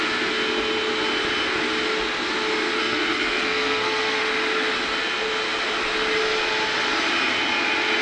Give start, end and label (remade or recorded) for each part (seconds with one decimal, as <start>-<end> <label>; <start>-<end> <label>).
0.0-2.8 recorded; 2.8-4.2 remade; 4.2-8.0 recorded